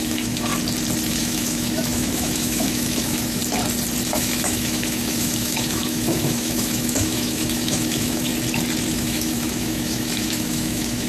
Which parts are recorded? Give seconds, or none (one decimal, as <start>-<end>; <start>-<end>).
0.5-1.1; 3.4-4.1; 8.3-8.9